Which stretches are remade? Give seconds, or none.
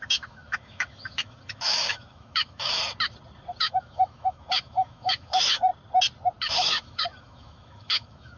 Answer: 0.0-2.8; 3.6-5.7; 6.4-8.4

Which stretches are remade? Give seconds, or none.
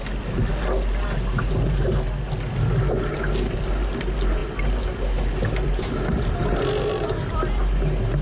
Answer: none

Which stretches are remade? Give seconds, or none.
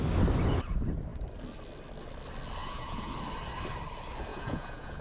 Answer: 2.6-3.1; 4.3-5.0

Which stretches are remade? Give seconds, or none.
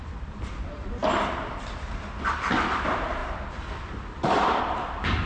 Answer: 0.0-1.0; 2.5-5.3